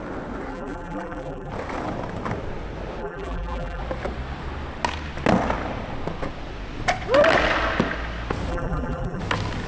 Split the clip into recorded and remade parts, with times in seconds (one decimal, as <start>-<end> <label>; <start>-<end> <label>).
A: 0.0-0.5 recorded; 0.5-1.5 remade; 1.5-3.0 recorded; 3.0-3.8 remade; 3.8-8.5 recorded; 8.5-9.2 remade; 9.2-9.7 recorded

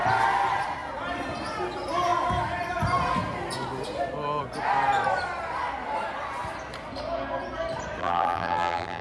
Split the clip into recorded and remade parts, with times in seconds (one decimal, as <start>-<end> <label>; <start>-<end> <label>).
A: 0.0-8.0 recorded; 8.0-9.0 remade

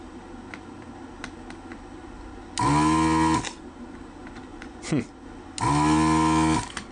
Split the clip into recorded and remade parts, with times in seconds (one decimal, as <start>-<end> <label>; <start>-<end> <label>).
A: 0.0-4.5 recorded; 4.5-5.0 remade; 5.0-6.9 recorded

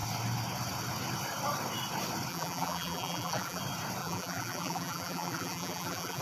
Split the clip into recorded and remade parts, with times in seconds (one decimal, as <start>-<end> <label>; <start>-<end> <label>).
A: 0.0-2.3 recorded; 2.3-3.6 remade; 3.6-4.0 recorded; 4.0-6.2 remade

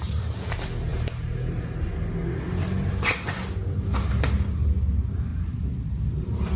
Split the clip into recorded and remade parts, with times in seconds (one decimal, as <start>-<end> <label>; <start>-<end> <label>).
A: 0.0-0.9 recorded; 0.9-1.9 remade; 1.9-5.3 recorded; 5.3-5.9 remade; 5.9-6.6 recorded

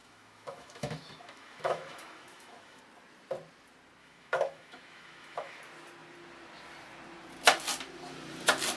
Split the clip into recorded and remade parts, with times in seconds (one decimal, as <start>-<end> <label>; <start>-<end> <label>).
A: 0.0-2.8 remade; 2.8-4.0 recorded; 4.0-5.6 remade; 5.6-8.8 recorded

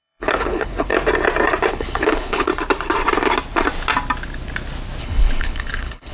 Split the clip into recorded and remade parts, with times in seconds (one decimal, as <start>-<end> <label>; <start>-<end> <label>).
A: 0.0-0.9 remade; 0.9-1.7 recorded; 1.7-2.5 remade; 2.5-5.0 recorded; 5.0-6.1 remade